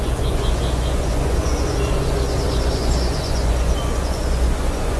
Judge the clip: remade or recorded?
remade